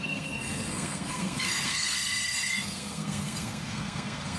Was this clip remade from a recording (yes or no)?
yes